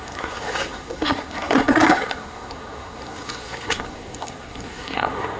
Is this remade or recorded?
remade